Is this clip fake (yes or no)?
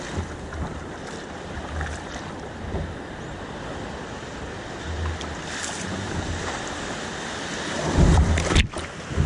yes